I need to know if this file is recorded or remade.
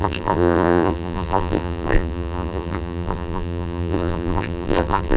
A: remade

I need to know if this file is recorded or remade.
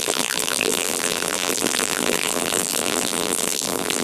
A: remade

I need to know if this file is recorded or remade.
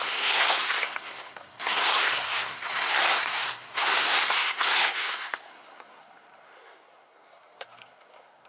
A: remade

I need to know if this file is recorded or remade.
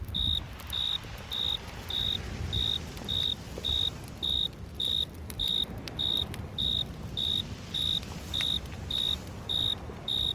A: remade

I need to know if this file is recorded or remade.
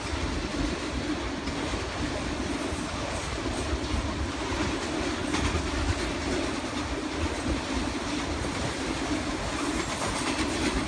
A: recorded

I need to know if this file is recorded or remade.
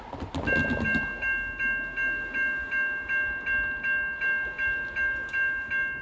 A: recorded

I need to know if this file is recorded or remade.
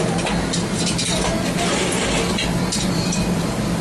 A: recorded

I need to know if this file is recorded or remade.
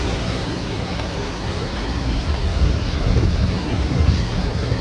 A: remade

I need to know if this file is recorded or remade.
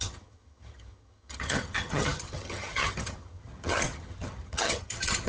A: remade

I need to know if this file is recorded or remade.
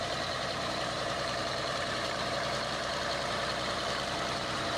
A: remade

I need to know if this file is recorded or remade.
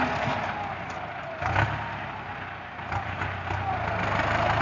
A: recorded